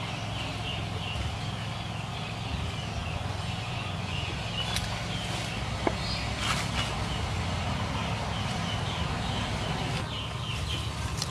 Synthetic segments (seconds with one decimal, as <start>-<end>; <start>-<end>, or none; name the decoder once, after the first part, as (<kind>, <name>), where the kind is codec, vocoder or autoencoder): 3.0-4.4 (vocoder, Vocos)